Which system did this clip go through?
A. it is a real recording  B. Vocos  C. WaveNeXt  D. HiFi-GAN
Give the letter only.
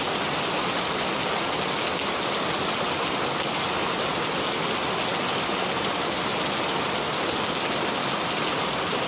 A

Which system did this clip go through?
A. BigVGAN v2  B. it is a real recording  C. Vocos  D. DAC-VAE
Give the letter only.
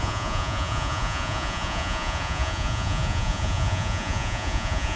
C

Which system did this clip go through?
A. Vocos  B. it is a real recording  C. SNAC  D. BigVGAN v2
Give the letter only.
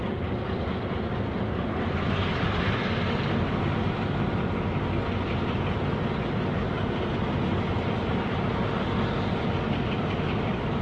B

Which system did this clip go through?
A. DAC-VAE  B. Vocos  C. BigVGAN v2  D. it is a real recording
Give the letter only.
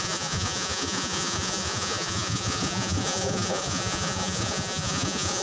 B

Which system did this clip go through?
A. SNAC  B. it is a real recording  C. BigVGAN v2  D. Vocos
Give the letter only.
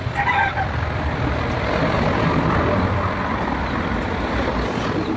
B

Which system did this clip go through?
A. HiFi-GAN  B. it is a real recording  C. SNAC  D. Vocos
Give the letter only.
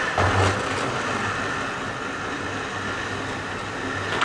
B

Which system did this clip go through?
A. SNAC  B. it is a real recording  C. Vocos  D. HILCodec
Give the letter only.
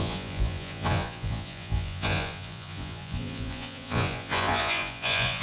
C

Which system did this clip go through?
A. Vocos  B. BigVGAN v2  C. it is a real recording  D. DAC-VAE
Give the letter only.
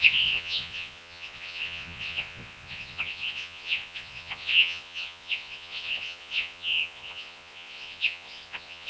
A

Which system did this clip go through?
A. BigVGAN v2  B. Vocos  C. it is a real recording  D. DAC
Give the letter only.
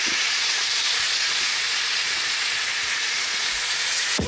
B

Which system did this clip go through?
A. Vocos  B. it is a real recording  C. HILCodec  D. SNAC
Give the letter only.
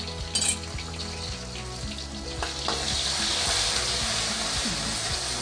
B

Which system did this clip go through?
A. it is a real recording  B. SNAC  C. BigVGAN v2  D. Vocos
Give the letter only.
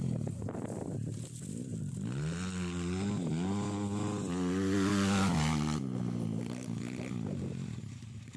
A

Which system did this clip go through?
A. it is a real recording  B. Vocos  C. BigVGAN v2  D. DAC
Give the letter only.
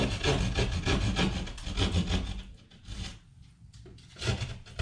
A